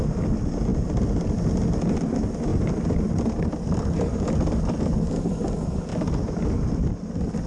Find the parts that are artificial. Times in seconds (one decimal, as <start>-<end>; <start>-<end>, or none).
none